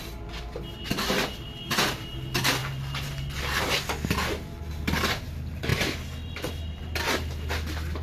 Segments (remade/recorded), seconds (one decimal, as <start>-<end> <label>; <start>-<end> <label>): 0.0-8.0 recorded

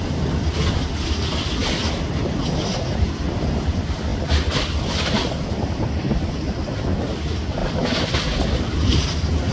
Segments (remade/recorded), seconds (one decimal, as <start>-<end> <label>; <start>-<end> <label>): 0.0-1.6 recorded; 1.6-3.2 remade; 3.2-4.1 recorded; 4.1-5.1 remade; 5.1-7.6 recorded; 7.6-9.5 remade

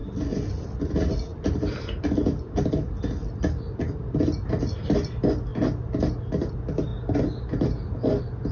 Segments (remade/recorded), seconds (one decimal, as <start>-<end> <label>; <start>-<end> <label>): 0.0-8.5 recorded

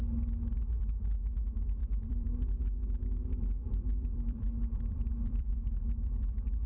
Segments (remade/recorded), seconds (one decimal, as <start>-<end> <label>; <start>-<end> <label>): 0.0-1.8 recorded; 1.8-2.6 remade; 2.6-3.6 recorded; 3.6-5.5 remade; 5.5-6.7 recorded

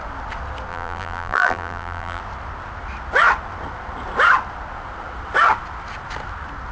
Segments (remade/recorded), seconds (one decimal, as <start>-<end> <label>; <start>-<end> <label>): 0.0-0.7 recorded; 0.7-2.2 remade; 2.2-6.7 recorded

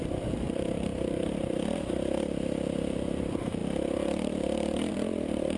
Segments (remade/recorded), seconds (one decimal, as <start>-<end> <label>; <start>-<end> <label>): 0.0-5.6 remade

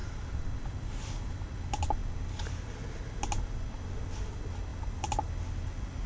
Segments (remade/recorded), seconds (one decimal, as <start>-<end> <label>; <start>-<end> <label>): 0.0-4.7 recorded; 4.7-5.3 remade; 5.3-6.1 recorded

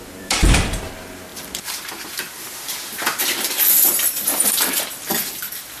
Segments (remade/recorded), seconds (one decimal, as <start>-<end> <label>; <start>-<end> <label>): 0.0-0.8 remade; 0.8-1.3 recorded; 1.3-4.8 remade; 4.8-5.8 recorded